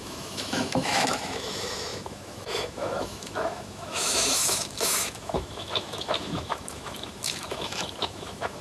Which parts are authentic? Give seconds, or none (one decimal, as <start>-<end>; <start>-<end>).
none